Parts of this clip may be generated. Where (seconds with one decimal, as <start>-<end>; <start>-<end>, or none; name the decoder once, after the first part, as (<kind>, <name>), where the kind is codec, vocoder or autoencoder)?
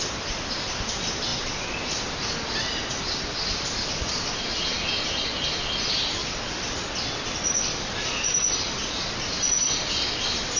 none